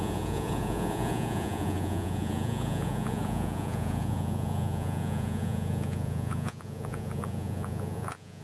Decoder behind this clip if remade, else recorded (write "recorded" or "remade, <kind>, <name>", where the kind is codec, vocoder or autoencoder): remade, vocoder, Vocos